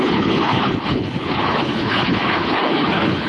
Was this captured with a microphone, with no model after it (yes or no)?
no